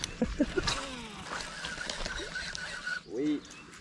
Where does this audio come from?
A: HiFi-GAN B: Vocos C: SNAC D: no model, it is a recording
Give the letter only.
D